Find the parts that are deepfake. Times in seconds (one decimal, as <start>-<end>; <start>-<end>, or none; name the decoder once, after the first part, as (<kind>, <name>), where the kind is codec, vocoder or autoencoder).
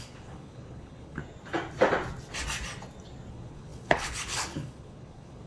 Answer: 0.0-1.2 (codec, HILCodec); 3.3-5.5